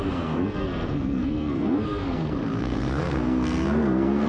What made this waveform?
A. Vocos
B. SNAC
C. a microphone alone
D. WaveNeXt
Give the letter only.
B